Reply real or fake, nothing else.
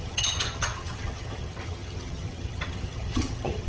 fake